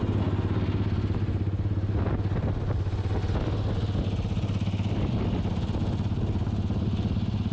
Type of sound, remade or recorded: recorded